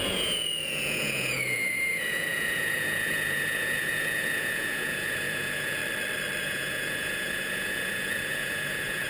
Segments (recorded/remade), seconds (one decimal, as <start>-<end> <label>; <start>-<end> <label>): 0.0-5.8 remade; 5.8-6.4 recorded; 6.4-9.1 remade